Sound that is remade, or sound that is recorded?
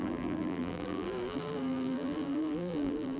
remade